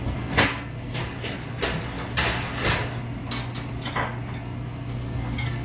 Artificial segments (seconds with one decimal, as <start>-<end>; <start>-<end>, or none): 0.0-1.0; 4.4-5.6